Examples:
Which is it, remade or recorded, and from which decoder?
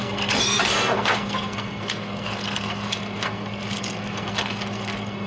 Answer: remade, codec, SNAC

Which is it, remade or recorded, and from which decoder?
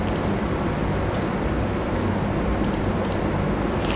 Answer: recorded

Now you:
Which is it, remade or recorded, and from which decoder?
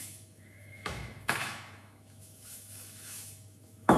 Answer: remade, autoencoder, DAC-VAE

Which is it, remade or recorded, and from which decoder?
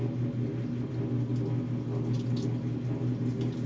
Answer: recorded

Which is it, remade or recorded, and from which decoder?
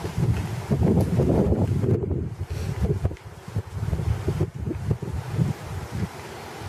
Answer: recorded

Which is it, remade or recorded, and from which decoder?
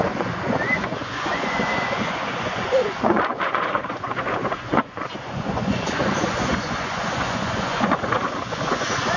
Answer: remade, vocoder, Vocos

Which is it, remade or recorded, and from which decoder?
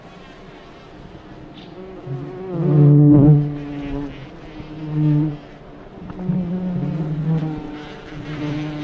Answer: recorded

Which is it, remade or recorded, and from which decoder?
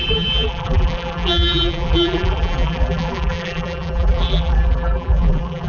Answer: remade, vocoder, BigVGAN v2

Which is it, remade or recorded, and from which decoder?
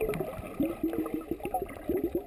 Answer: recorded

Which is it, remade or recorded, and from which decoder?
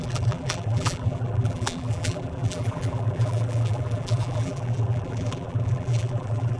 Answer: remade, vocoder, BigVGAN v2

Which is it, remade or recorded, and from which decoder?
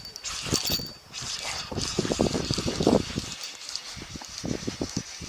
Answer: recorded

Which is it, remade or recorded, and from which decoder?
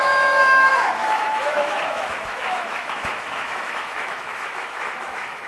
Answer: remade, autoencoder, DAC-VAE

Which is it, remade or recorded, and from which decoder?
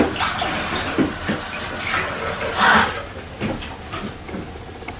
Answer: recorded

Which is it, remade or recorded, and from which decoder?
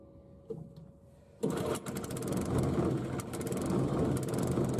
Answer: recorded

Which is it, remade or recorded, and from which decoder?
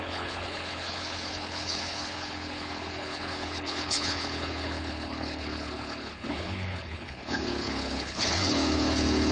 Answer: remade, codec, HILCodec